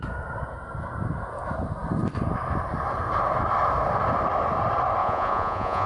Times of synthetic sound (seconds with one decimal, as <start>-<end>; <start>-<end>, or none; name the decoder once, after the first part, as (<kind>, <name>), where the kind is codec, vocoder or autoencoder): 5.0-5.9 (vocoder, Vocos)